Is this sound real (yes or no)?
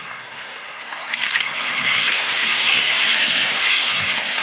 no